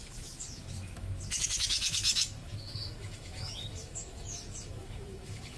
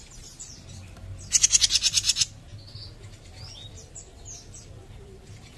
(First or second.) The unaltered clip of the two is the second